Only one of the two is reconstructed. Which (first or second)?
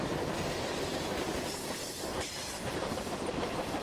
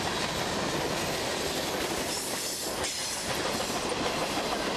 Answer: first